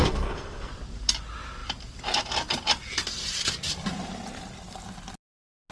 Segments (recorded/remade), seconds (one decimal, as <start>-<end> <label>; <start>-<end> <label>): 0.0-0.7 remade; 0.7-5.7 recorded

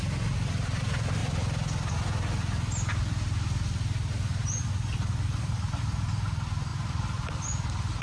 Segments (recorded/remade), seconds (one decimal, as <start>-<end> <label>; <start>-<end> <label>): 0.0-8.0 recorded

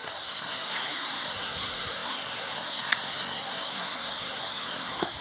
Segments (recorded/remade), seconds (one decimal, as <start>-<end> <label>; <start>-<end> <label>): 0.0-5.2 remade

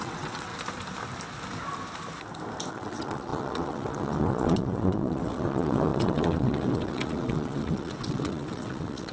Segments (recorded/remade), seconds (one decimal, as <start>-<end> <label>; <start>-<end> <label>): 0.0-0.5 remade; 0.5-2.7 recorded; 2.7-9.1 remade